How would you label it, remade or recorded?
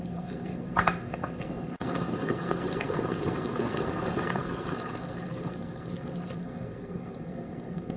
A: remade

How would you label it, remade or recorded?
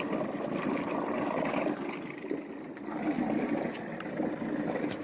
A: recorded